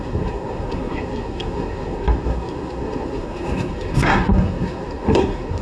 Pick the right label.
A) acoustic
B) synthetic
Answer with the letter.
B